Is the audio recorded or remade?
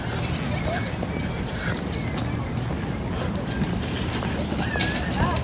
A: recorded